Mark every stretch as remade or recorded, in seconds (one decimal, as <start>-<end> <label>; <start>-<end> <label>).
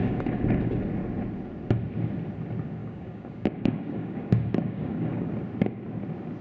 0.0-0.8 remade; 0.8-2.8 recorded; 2.8-5.3 remade; 5.3-6.4 recorded